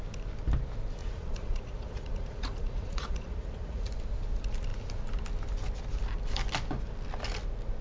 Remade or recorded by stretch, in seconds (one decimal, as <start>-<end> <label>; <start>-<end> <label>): 0.0-1.0 recorded; 1.0-3.9 remade; 3.9-7.8 recorded